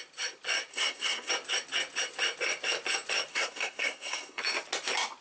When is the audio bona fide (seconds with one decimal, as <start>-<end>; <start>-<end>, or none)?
0.0-0.7; 1.3-3.3; 4.4-5.2